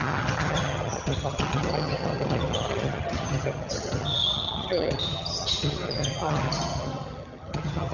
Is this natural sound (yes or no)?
no